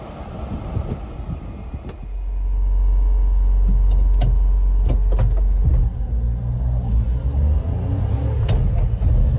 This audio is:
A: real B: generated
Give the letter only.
A